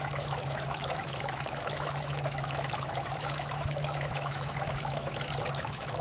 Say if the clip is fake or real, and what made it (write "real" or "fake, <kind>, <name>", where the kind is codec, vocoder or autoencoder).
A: fake, autoencoder, DAC-VAE